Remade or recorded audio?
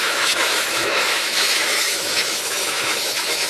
remade